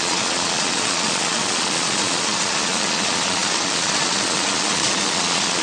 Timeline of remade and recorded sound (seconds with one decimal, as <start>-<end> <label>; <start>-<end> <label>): 0.0-5.6 remade